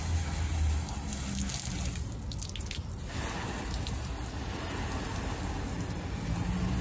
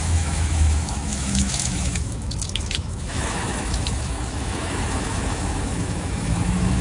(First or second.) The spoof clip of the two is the second